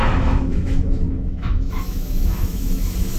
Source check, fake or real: fake